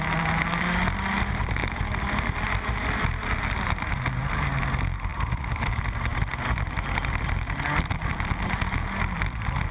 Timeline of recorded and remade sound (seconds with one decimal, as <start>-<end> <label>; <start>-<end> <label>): 0.0-9.7 recorded